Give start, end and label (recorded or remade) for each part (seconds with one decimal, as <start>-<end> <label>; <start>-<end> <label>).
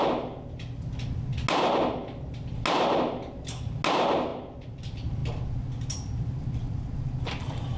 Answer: 0.0-7.8 recorded